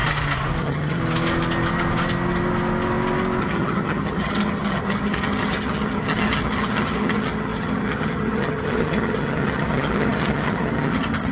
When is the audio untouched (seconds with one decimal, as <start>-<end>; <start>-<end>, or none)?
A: 0.0-0.6; 1.0-3.4